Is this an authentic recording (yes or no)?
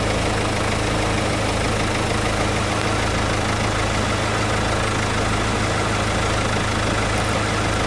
yes